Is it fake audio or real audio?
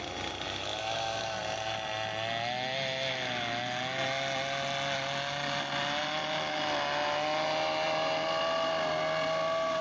real